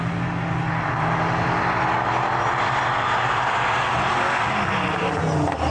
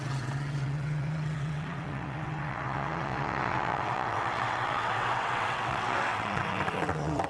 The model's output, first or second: second